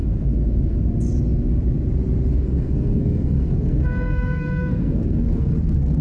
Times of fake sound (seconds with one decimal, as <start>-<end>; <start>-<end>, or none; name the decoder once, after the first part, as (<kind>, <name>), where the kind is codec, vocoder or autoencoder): 0.0-0.8 (codec, SNAC); 2.3-6.0